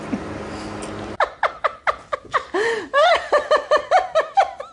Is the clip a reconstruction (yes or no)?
no